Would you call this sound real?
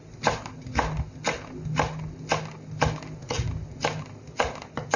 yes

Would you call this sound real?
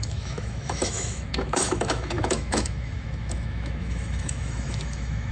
no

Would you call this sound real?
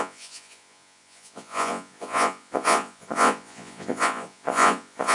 no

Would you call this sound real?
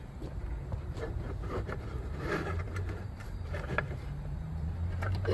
no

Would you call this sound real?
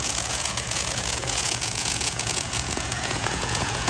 no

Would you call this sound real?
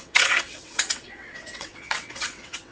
no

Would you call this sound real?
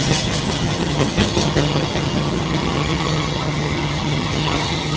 no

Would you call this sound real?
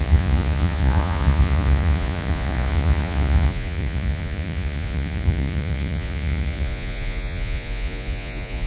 no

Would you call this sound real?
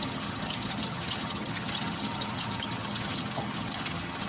no